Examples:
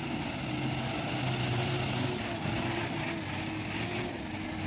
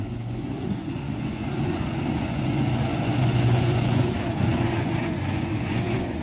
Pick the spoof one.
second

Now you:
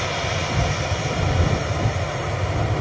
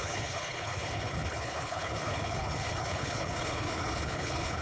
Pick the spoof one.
second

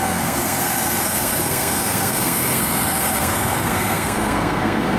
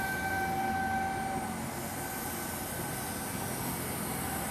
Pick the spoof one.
first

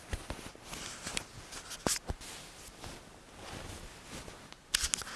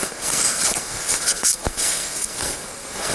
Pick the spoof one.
second